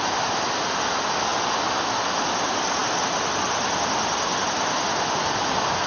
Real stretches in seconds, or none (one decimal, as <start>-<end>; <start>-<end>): 0.0-5.9